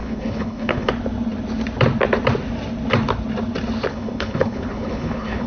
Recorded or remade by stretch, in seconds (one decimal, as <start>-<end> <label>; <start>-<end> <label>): 0.0-0.9 remade; 0.9-3.9 recorded; 3.9-5.5 remade